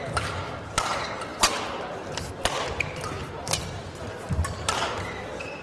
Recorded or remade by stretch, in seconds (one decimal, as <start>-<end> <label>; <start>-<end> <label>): 0.0-5.6 recorded